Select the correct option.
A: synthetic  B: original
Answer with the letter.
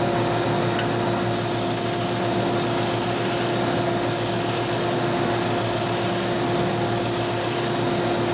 B